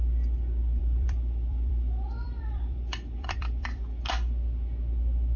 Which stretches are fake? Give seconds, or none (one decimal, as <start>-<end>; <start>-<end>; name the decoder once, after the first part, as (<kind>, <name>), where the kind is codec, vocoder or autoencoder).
0.8-4.0 (vocoder, BigVGAN v2)